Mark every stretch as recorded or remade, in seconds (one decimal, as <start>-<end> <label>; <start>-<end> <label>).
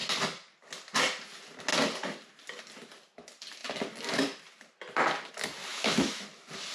0.0-5.7 recorded; 5.7-6.2 remade; 6.2-6.7 recorded